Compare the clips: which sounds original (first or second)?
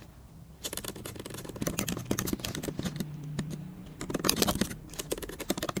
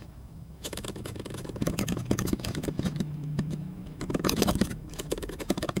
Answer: first